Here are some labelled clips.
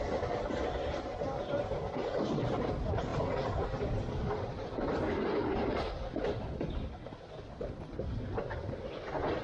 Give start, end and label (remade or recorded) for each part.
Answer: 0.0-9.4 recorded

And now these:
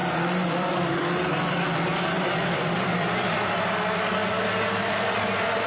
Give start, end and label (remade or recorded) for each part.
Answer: 0.0-4.2 remade; 4.2-4.9 recorded; 4.9-5.7 remade

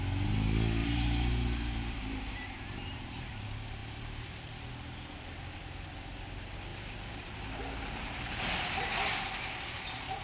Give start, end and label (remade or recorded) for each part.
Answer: 0.0-0.8 recorded; 0.8-3.3 remade; 3.3-3.8 recorded; 3.8-4.7 remade; 4.7-6.7 recorded; 6.7-7.4 remade; 7.4-10.2 recorded

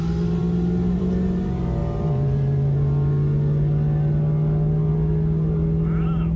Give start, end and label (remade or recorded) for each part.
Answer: 0.0-6.4 recorded